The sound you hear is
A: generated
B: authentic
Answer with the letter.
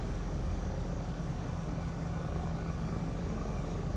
A